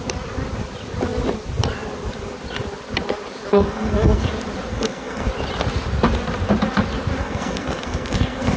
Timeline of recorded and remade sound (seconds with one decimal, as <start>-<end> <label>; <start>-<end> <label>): 0.0-3.5 recorded; 3.5-4.3 remade; 4.3-4.7 recorded; 4.7-5.3 remade; 5.3-7.2 recorded; 7.2-8.6 remade